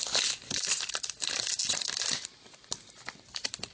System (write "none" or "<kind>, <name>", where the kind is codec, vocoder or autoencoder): none